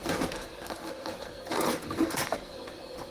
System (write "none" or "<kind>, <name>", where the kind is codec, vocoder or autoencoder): codec, SNAC